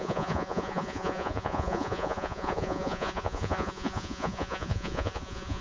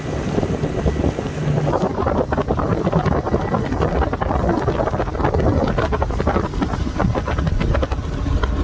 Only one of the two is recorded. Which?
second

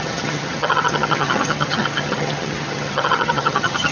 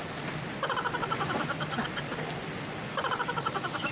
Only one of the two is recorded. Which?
second